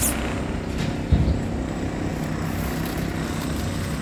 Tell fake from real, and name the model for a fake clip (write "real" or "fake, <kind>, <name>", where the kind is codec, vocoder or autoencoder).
real